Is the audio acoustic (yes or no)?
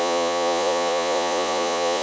no